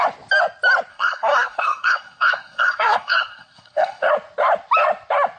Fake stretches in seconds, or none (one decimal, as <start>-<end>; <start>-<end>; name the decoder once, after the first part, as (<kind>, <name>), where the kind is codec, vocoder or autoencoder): 0.9-4.1 (codec, SNAC)